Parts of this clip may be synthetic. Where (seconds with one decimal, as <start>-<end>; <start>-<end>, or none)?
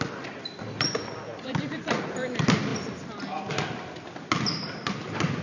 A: none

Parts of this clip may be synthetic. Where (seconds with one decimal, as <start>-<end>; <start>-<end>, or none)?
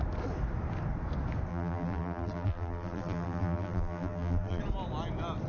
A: 1.5-4.6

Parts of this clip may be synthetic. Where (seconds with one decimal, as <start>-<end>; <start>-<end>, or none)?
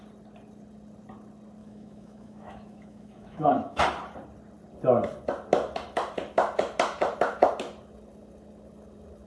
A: 1.6-3.8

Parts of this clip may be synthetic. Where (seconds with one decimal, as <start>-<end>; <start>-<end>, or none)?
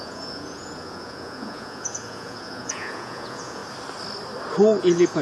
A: 0.0-3.6; 4.8-5.2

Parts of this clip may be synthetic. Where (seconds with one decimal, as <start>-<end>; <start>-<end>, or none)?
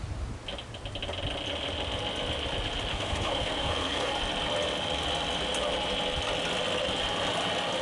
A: 2.9-4.1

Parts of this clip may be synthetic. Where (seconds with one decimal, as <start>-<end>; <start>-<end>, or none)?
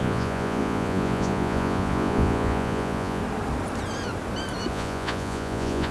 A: 0.0-3.2; 4.7-5.9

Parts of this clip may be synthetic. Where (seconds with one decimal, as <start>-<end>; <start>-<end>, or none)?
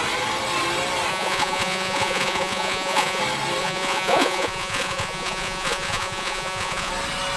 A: 1.1-3.2; 3.6-6.9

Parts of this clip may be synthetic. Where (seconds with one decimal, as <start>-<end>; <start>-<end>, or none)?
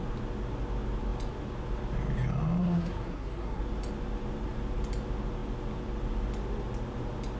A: 2.6-3.6